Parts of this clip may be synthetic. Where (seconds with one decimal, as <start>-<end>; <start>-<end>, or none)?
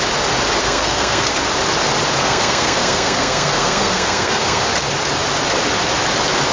0.6-1.3; 2.2-4.6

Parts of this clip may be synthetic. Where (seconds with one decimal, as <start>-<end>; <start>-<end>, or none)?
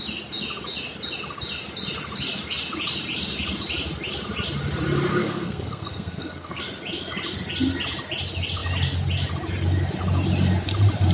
5.1-6.6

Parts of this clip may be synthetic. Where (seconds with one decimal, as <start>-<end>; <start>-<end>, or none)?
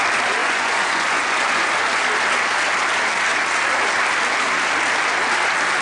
0.4-2.0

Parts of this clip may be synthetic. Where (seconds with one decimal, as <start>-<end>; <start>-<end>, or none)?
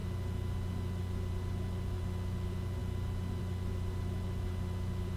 none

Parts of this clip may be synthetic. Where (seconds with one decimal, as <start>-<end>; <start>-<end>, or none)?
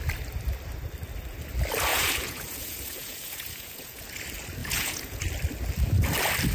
1.9-4.0; 4.6-5.2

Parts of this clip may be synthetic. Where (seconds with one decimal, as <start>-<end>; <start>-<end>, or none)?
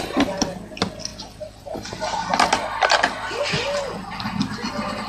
none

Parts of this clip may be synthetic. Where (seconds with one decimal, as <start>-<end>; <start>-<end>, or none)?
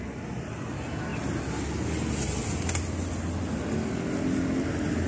none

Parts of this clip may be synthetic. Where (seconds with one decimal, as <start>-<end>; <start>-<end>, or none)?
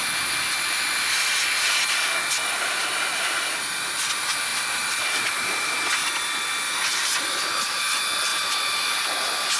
4.5-5.5